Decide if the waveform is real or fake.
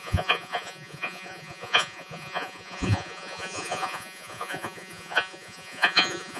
fake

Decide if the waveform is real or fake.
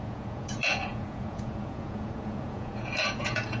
fake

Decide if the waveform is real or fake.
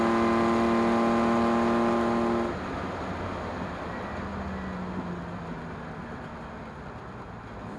real